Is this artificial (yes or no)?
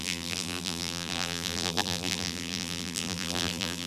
yes